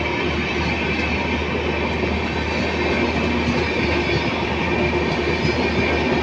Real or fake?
real